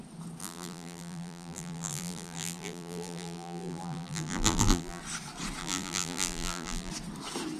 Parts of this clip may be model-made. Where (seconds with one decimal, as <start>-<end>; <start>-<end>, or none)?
0.4-5.0; 5.6-6.9

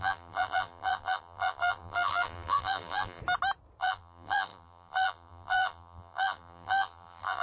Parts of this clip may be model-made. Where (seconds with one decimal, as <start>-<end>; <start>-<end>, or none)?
0.0-3.2; 3.8-7.4